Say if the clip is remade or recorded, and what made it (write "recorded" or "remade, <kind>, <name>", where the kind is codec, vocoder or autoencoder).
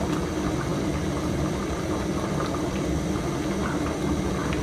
recorded